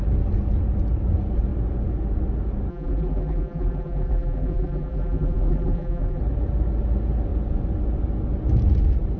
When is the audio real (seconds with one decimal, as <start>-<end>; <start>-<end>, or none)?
0.0-2.7; 6.2-9.2

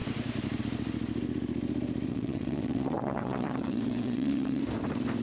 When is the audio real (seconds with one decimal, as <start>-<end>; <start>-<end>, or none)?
0.0-2.1; 4.6-5.2